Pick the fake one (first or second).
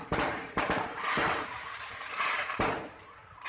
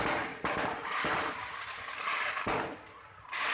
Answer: first